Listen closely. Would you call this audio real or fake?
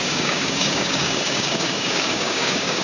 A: fake